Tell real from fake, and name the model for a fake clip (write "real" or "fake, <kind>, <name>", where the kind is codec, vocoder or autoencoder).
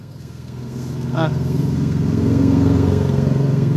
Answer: fake, codec, SNAC